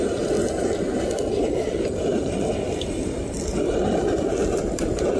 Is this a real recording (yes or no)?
yes